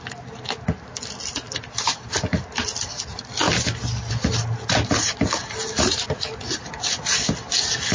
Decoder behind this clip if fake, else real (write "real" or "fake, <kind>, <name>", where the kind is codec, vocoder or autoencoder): real